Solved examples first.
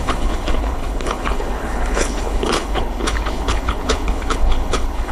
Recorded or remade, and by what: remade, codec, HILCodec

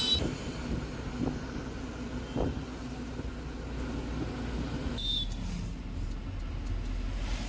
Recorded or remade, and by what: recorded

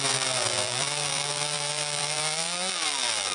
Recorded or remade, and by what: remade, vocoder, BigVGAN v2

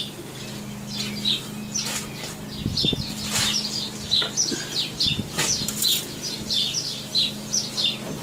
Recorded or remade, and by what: recorded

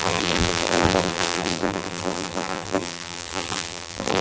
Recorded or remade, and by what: remade, vocoder, BigVGAN v2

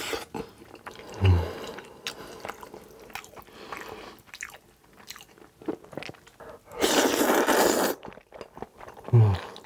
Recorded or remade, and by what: recorded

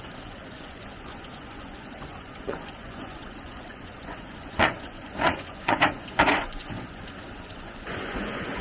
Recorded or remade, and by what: remade, vocoder, Vocos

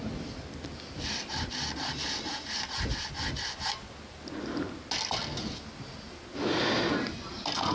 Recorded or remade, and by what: recorded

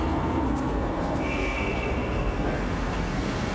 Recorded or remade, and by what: remade, codec, SNAC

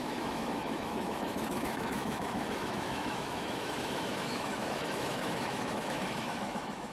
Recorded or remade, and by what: remade, autoencoder, DAC-VAE